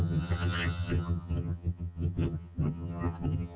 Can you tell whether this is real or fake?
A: fake